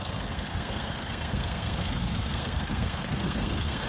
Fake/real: fake